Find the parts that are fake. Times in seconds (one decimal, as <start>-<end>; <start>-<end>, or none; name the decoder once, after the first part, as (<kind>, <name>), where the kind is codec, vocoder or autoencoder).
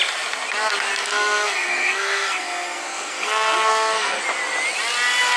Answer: 1.0-4.2 (codec, SNAC)